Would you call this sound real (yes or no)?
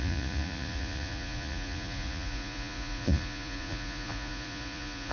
no